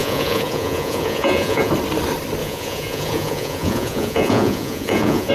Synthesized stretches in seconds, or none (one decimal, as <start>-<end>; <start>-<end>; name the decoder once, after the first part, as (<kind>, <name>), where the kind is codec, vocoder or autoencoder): 0.0-1.7 (vocoder, Vocos); 2.4-5.3